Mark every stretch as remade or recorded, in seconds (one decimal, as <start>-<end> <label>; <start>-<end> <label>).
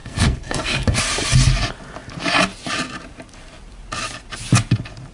0.0-1.0 remade; 1.0-5.1 recorded